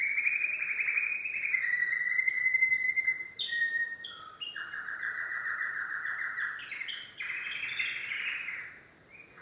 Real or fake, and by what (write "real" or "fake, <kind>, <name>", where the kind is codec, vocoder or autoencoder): real